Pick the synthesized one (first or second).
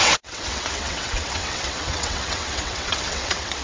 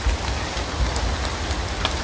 first